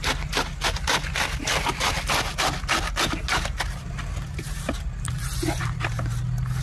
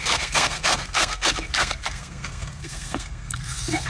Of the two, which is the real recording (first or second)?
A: first